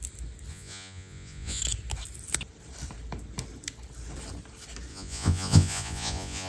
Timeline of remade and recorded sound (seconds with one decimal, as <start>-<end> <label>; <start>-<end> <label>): 0.0-0.5 recorded; 0.5-1.6 remade; 1.6-4.9 recorded; 4.9-6.5 remade